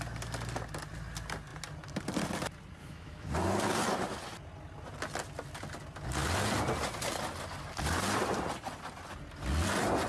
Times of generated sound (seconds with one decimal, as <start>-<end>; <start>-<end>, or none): 2.8-3.3